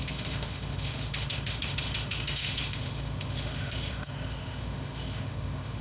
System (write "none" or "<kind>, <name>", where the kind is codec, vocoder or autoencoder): autoencoder, DAC-VAE